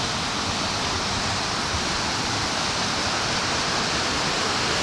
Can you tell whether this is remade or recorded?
recorded